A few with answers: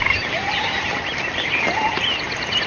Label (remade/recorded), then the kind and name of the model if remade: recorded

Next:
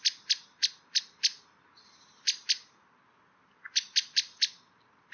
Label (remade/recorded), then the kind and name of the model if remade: recorded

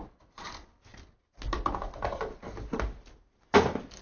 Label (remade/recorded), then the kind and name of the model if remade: recorded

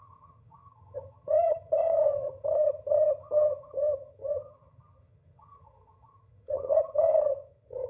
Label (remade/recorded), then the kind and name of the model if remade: remade, vocoder, HiFi-GAN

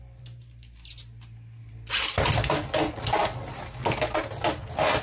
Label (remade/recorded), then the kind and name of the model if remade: recorded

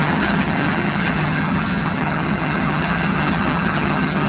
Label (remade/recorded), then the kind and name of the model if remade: remade, vocoder, HiFi-GAN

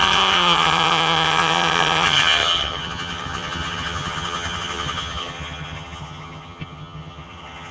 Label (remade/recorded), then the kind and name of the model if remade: remade, vocoder, HiFi-GAN